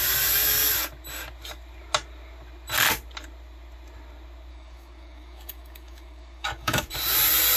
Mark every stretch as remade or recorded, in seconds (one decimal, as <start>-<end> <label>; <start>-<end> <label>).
0.0-4.5 recorded; 4.5-6.9 remade; 6.9-7.6 recorded